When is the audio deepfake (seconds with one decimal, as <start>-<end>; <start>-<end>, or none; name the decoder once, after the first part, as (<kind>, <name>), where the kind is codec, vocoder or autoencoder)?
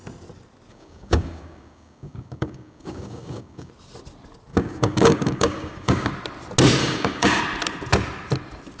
0.7-3.7 (codec, DAC); 4.5-6.1; 6.8-7.4